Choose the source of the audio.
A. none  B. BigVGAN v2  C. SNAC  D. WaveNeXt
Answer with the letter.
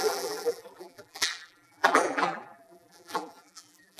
B